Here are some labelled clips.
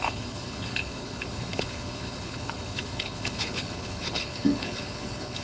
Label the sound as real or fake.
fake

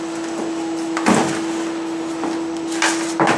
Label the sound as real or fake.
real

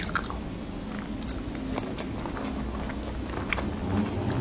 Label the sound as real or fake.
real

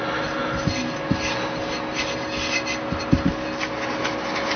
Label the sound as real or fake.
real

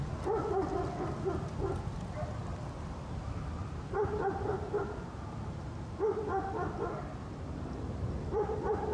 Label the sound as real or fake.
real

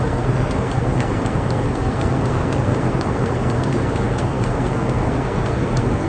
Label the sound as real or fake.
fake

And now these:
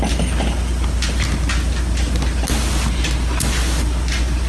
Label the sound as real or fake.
real